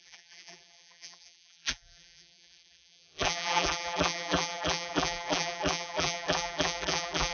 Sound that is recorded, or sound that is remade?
remade